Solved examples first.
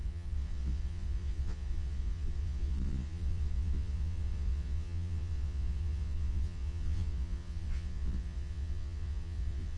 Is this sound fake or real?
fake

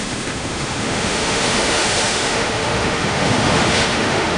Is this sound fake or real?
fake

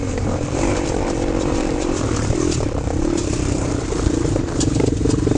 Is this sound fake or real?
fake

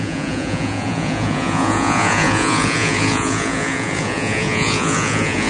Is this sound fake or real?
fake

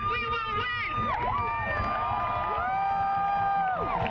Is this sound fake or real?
real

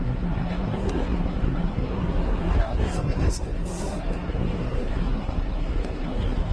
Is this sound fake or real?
fake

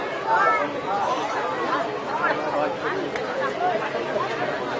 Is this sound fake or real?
real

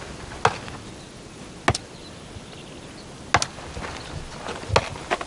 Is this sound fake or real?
real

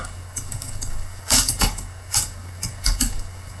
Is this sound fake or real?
fake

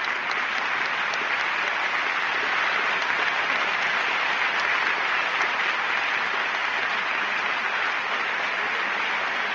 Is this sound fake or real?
real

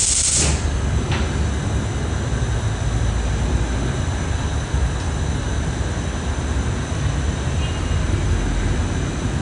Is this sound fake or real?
real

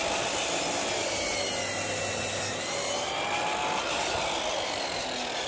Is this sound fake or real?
real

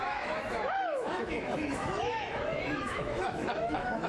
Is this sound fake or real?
fake